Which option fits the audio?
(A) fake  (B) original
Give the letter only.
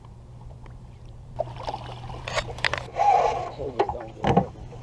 A